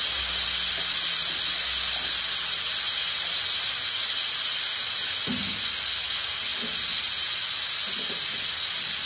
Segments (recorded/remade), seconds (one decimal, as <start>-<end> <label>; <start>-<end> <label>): 0.0-9.1 recorded